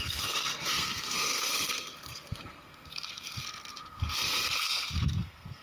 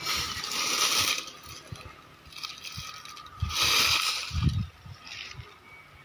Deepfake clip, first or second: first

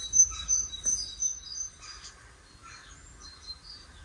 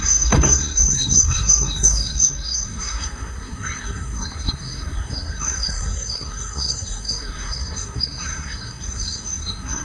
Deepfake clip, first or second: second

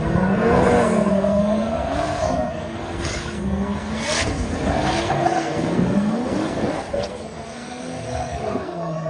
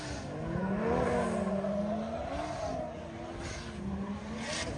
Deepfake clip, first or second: first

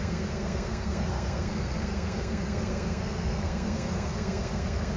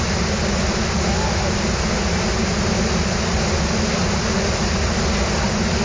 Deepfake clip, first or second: first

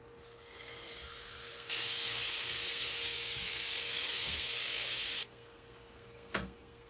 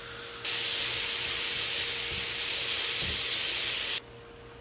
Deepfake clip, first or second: first